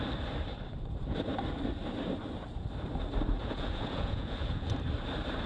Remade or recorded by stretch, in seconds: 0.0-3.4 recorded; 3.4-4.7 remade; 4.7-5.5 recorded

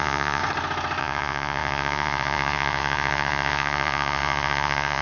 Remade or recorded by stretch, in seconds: 0.0-0.4 remade; 0.4-1.0 recorded; 1.0-5.0 remade

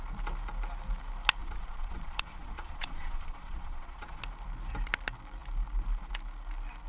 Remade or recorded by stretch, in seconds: 0.0-1.4 recorded; 1.4-4.2 remade; 4.2-6.9 recorded